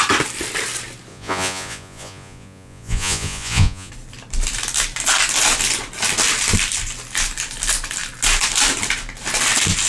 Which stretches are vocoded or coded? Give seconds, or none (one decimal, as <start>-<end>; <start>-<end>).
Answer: 1.1-3.9